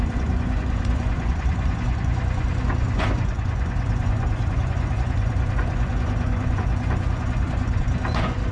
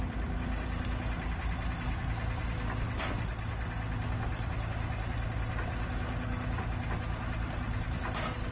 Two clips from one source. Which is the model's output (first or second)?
first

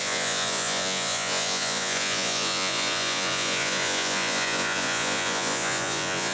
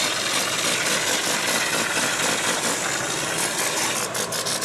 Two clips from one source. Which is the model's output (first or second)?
first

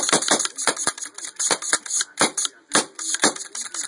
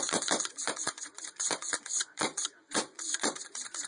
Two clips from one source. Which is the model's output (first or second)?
second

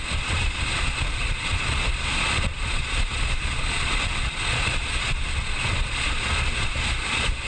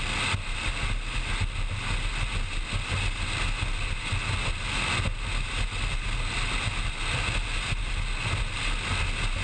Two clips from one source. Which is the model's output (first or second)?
first